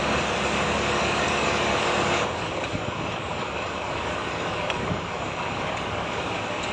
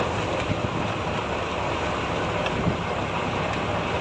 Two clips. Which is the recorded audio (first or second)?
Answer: second